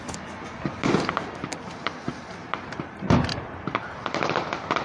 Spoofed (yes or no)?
no